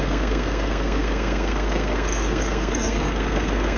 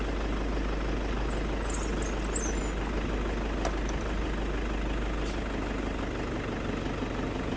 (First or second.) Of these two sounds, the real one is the second